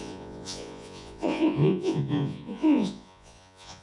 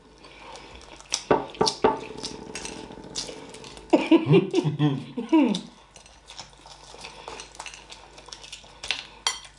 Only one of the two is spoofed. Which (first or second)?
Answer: first